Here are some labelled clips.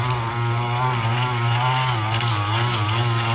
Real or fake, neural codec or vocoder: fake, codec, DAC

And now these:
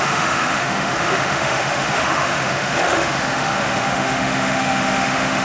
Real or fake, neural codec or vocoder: fake, autoencoder, DAC-VAE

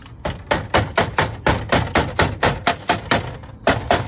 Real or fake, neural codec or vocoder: real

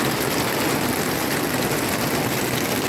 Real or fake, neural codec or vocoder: real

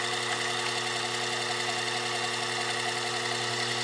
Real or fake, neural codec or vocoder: real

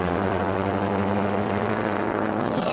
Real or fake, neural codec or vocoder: fake, vocoder, WaveNeXt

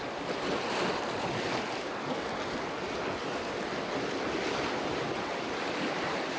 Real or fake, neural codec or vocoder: real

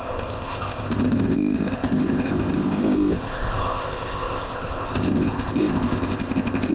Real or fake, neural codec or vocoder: fake, codec, ZipCodec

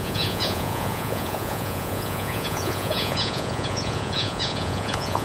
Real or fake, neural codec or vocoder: fake, vocoder, Vocos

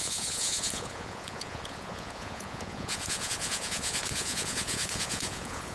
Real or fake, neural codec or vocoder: fake, vocoder, Vocos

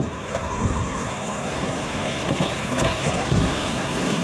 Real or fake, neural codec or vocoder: fake, codec, SNAC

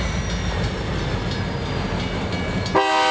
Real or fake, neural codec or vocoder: real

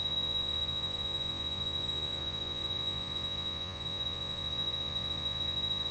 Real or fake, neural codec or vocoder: fake, vocoder, Vocos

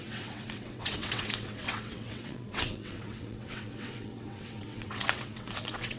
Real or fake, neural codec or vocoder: fake, vocoder, WaveNeXt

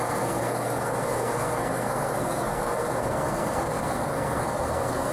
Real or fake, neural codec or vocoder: fake, codec, SNAC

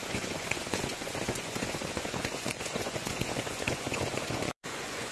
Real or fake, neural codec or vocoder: fake, vocoder, Vocos